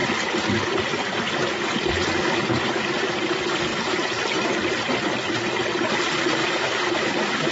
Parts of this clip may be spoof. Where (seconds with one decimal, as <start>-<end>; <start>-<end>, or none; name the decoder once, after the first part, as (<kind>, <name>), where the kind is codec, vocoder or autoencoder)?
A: 3.7-5.9 (vocoder, BigVGAN v2)